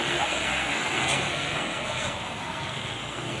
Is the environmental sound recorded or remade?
remade